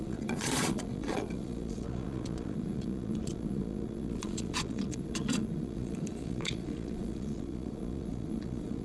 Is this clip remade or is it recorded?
remade